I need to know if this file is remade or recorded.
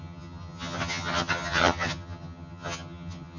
remade